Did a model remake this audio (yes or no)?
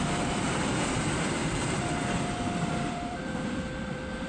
yes